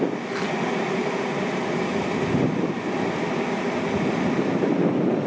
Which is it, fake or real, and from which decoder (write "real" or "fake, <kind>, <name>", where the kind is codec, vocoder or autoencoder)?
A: real